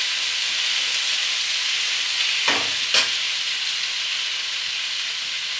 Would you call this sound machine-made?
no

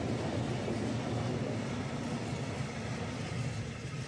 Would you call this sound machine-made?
no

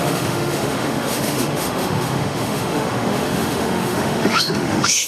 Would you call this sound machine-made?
yes